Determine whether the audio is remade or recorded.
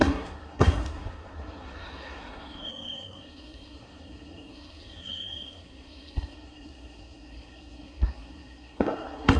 remade